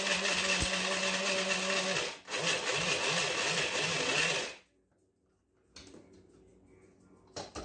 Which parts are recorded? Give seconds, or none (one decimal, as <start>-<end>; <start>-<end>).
0.0-7.6